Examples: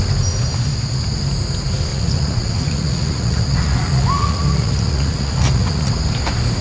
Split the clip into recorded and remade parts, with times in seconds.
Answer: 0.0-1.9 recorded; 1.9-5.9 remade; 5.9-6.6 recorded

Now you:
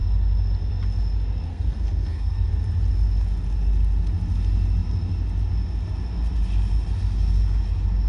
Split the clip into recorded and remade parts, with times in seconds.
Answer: 0.0-1.5 recorded; 1.5-2.5 remade; 2.5-8.1 recorded

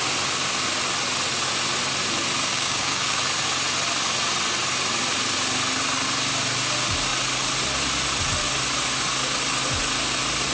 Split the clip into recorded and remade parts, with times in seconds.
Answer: 0.0-2.5 recorded; 2.5-3.2 remade; 3.2-10.5 recorded

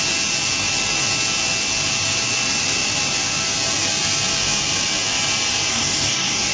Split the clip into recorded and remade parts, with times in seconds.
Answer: 0.0-5.7 recorded; 5.7-6.5 remade

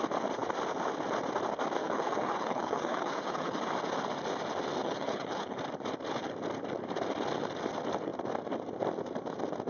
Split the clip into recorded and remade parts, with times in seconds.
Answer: 0.0-1.8 recorded; 1.8-3.6 remade; 3.6-4.8 recorded; 4.8-5.6 remade; 5.6-9.7 recorded

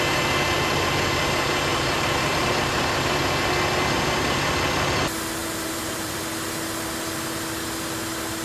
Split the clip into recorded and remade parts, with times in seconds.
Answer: 0.0-1.7 recorded; 1.7-3.1 remade; 3.1-5.4 recorded; 5.4-6.2 remade; 6.2-8.4 recorded

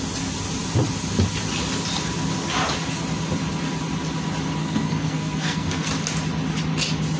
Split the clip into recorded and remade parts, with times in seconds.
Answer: 0.0-4.6 recorded; 4.6-5.9 remade; 5.9-7.2 recorded